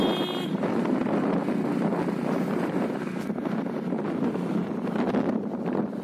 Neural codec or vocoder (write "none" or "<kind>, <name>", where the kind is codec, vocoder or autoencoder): none